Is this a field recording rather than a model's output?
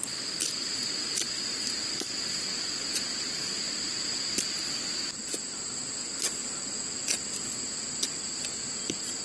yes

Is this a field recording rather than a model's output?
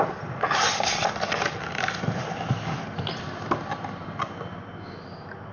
yes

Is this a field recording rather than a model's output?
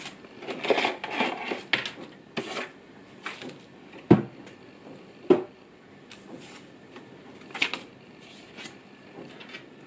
yes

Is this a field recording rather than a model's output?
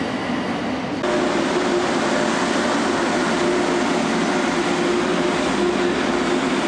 yes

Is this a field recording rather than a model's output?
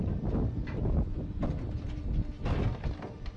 yes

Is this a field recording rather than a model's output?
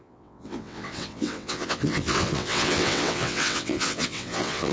no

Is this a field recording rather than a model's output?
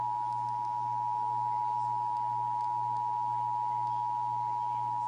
yes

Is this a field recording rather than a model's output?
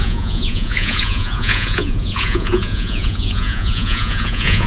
no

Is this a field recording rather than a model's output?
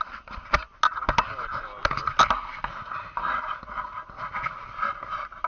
yes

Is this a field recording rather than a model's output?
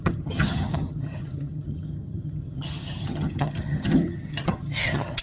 no